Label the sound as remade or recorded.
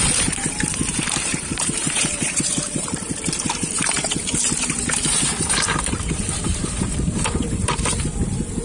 remade